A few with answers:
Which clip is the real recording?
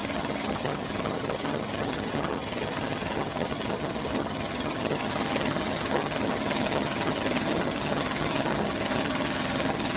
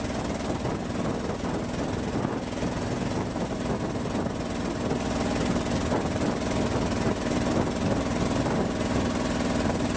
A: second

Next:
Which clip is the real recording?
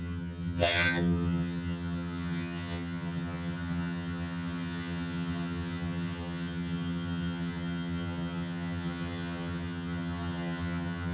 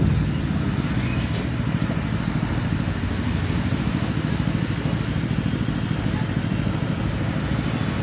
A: second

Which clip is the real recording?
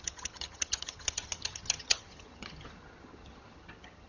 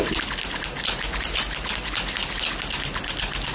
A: second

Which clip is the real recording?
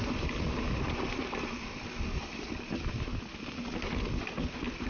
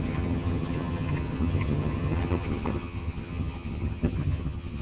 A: first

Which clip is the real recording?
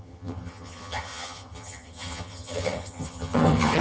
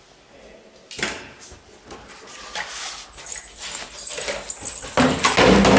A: second